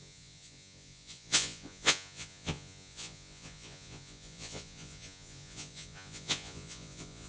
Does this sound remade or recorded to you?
remade